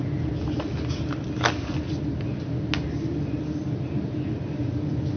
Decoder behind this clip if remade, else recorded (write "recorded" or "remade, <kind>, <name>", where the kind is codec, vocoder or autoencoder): recorded